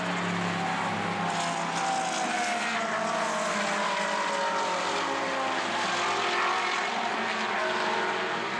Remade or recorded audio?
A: recorded